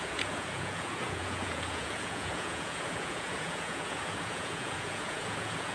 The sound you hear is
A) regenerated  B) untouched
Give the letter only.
A